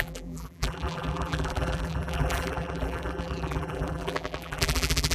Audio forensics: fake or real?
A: fake